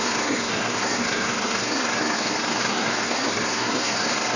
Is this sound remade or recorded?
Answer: remade